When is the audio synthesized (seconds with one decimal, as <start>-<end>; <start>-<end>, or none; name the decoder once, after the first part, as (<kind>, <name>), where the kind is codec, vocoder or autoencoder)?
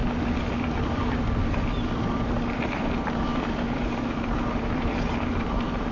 none